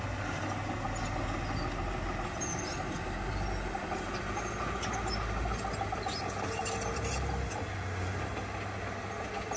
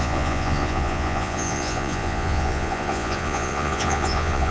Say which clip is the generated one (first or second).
second